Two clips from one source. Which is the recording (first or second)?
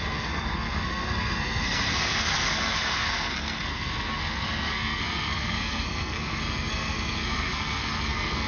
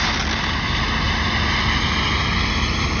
second